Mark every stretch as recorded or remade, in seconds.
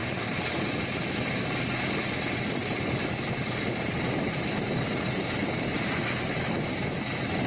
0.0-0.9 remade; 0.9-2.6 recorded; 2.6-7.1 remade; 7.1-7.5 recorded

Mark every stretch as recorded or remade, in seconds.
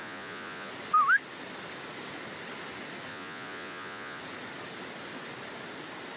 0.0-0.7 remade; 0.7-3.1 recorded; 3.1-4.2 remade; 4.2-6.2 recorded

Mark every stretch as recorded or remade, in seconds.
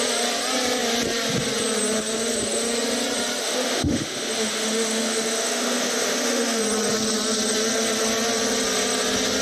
0.0-3.4 recorded; 3.4-6.6 remade; 6.6-9.4 recorded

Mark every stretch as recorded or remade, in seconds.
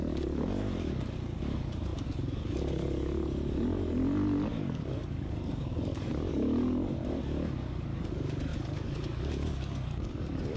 0.0-10.6 remade